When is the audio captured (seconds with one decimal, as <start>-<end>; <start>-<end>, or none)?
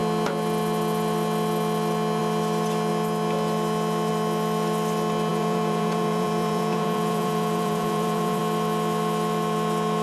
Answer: 0.0-5.3; 8.4-10.0